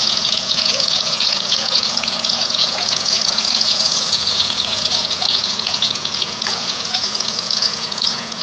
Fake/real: fake